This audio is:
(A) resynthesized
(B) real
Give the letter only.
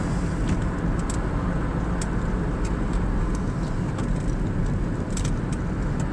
B